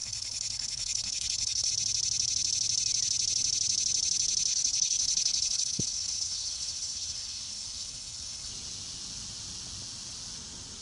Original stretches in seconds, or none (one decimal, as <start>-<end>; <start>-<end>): 1.7-4.5; 8.5-10.8